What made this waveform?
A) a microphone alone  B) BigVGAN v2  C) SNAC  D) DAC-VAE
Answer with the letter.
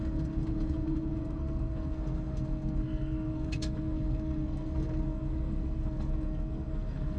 C